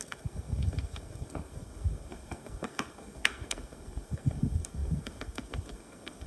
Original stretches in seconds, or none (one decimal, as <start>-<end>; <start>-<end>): none